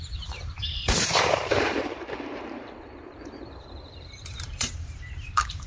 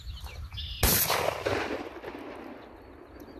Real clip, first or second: second